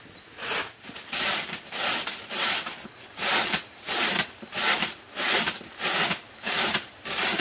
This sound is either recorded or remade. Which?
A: recorded